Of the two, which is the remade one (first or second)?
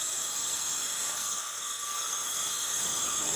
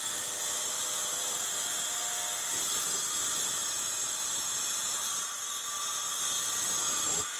first